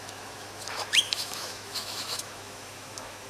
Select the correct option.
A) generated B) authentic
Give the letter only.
A